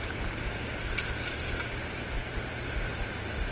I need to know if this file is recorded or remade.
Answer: recorded